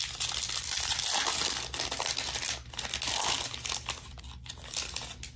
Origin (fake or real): real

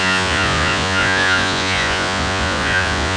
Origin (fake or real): fake